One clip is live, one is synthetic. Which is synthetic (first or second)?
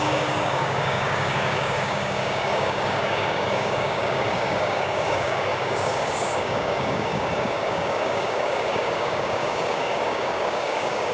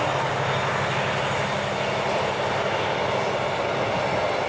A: first